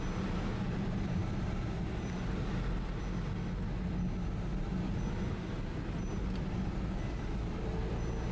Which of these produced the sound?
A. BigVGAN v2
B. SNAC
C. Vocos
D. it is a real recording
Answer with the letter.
D